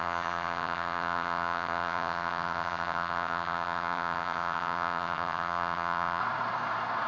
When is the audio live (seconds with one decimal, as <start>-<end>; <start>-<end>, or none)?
6.2-7.1